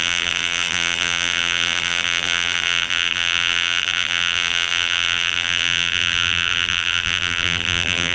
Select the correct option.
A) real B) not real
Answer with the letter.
B